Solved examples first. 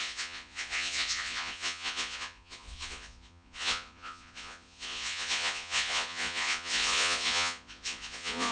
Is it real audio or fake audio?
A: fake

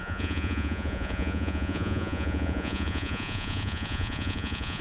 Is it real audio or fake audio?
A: fake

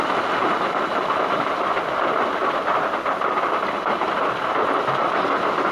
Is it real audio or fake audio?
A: real